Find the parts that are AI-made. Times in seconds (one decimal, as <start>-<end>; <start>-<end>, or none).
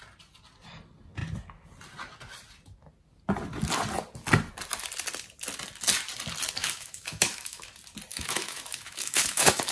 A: 6.6-7.7; 8.1-9.7